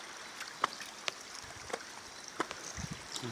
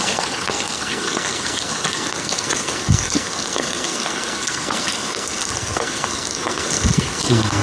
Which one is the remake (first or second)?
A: second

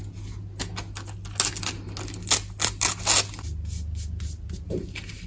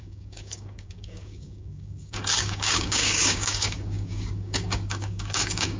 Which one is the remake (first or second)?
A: second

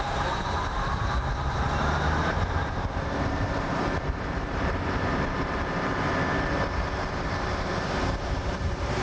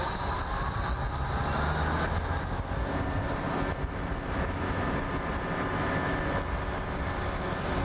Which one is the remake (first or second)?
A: first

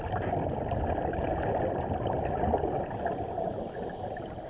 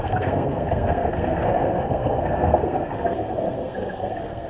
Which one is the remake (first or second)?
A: second